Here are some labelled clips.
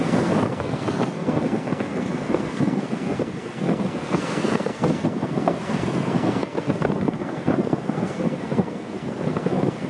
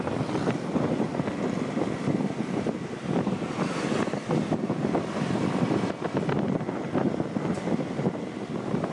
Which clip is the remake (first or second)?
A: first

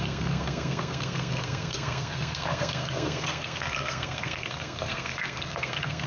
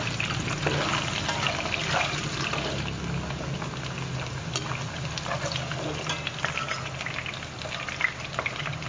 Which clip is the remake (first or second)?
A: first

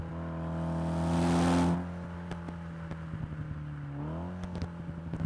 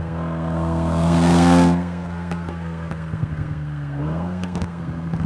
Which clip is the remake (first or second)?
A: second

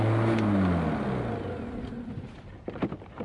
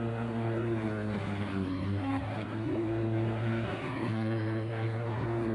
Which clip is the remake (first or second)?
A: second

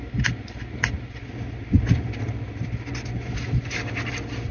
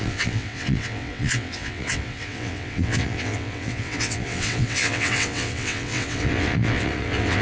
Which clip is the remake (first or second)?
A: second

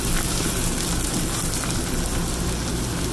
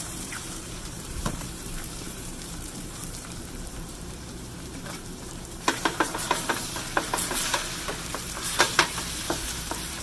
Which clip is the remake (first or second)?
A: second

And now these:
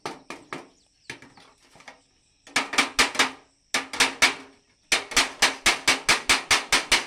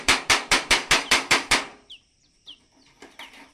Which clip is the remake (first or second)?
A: second